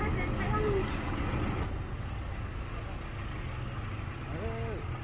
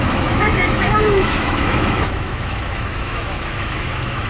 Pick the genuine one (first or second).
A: first